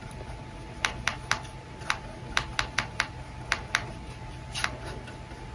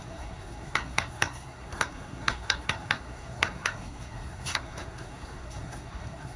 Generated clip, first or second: second